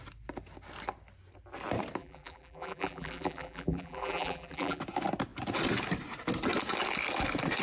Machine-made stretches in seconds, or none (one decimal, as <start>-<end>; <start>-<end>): 2.0-4.8